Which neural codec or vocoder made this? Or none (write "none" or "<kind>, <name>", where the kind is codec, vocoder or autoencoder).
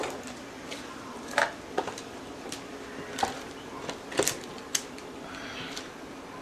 none